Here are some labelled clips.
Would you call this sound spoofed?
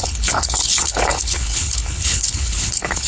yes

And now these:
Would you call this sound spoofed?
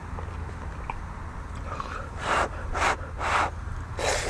no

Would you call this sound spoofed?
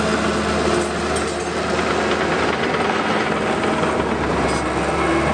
no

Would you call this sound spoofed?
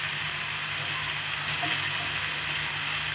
no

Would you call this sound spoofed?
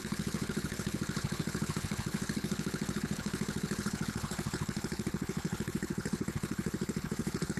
yes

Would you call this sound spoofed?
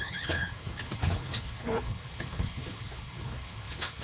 yes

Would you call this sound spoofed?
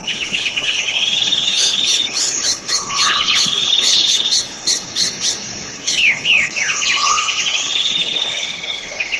yes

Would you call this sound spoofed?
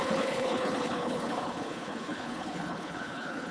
yes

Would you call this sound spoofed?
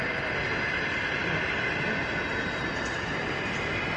no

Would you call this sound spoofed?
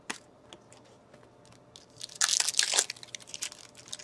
no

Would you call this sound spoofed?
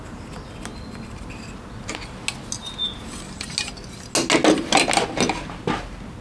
no